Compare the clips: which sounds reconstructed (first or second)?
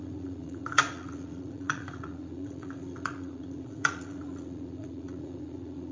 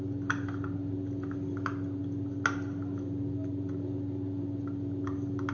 first